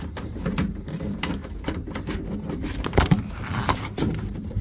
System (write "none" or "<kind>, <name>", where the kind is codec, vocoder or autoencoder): vocoder, BigVGAN v2